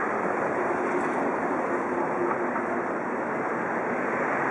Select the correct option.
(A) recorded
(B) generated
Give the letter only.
A